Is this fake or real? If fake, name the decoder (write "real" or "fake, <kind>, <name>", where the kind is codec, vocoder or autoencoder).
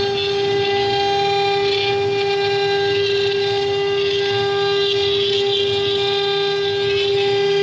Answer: real